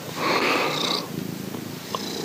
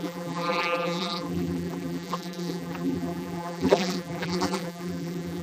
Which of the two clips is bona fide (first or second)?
first